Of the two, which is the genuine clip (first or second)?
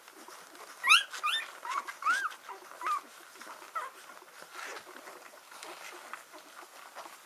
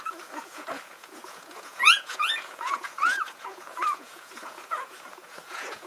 first